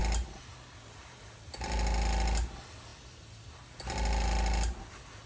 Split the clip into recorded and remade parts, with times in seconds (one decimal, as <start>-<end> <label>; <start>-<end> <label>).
0.0-5.3 recorded